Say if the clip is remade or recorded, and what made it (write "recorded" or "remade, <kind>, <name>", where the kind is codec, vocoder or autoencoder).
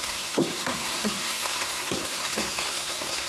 remade, codec, SNAC